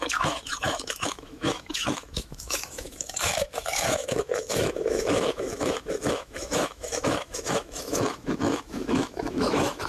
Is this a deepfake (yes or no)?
yes